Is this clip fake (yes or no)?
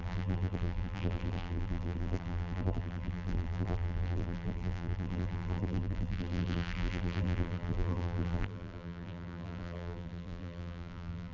yes